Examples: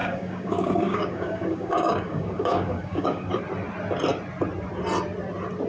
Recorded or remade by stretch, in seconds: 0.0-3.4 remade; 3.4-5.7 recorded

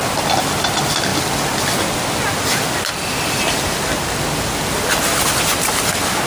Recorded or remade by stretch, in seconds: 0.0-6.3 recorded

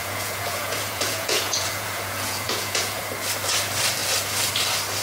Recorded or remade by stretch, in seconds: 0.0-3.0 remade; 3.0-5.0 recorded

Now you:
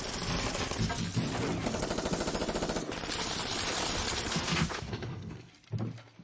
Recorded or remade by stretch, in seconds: 0.0-4.3 recorded; 4.3-5.5 remade; 5.5-6.2 recorded

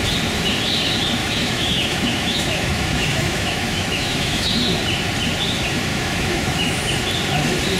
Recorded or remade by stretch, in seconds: 0.0-1.2 recorded; 1.2-4.5 remade; 4.5-5.9 recorded; 5.9-6.8 remade; 6.8-7.8 recorded